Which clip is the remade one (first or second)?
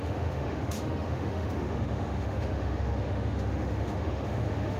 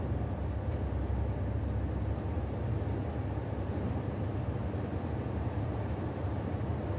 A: first